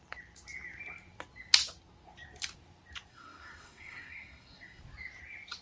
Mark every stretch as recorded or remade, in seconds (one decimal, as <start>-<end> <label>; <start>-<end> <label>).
0.0-3.1 recorded; 3.1-4.8 remade; 4.8-5.6 recorded